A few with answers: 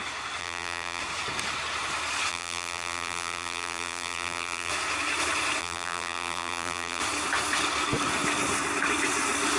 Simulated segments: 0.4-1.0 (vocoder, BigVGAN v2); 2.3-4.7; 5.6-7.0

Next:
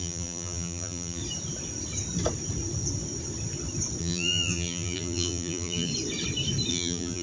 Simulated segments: 0.0-1.2 (vocoder, BigVGAN v2); 4.0-5.9; 6.7-7.2

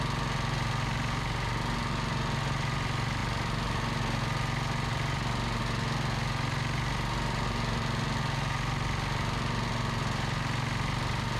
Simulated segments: none

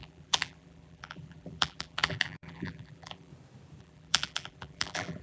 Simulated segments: 0.0-3.3 (vocoder, BigVGAN v2); 3.8-5.2

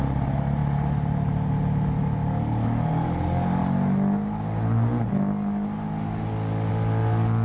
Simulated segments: none